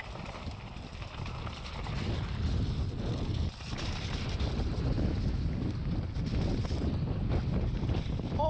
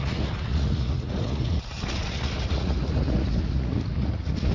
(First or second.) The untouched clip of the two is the first